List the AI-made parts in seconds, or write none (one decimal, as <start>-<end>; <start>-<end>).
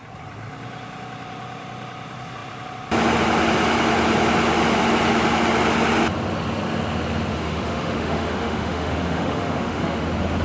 7.3-10.0